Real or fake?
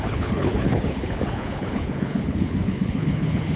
fake